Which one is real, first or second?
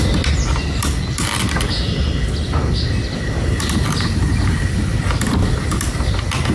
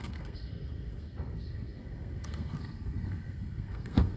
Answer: first